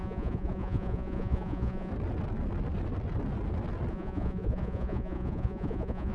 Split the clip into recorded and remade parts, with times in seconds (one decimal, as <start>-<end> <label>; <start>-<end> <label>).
0.0-1.9 remade; 1.9-3.9 recorded; 3.9-6.1 remade

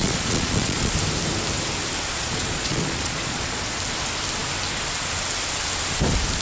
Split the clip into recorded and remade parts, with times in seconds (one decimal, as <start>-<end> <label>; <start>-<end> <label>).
0.0-0.9 remade; 0.9-2.1 recorded; 2.1-3.8 remade; 3.8-6.4 recorded

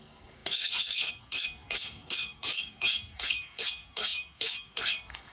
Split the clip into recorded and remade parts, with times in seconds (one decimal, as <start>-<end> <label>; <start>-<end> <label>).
0.0-5.3 remade

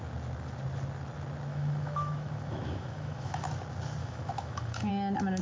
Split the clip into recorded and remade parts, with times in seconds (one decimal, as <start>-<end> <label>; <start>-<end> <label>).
0.0-1.5 recorded; 1.5-3.4 remade; 3.4-4.0 recorded; 4.0-4.9 remade; 4.9-5.4 recorded

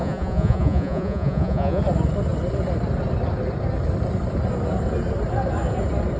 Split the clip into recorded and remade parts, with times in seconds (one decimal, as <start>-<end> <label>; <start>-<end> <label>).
0.0-1.8 remade; 1.8-6.2 recorded